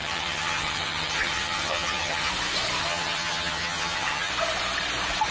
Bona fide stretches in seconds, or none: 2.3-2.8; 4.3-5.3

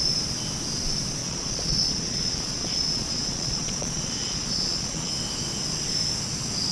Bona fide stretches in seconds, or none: 0.0-1.2; 5.1-6.7

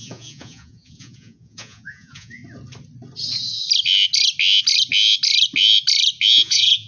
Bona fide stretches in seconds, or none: 2.4-6.3

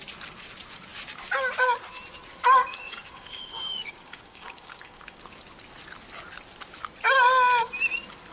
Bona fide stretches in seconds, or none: 0.0-2.6; 5.2-8.3

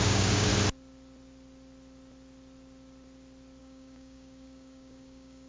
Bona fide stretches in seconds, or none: 0.5-3.6

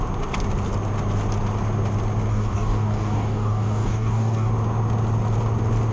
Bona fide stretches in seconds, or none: 0.0-2.3; 4.5-5.9

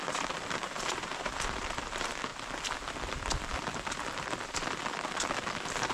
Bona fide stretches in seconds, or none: 2.3-5.9

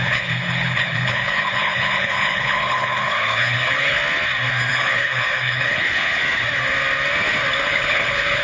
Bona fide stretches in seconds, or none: 4.0-4.7; 6.2-7.6